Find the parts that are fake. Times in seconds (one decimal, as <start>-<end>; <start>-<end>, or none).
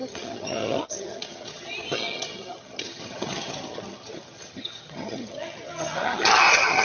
0.0-6.8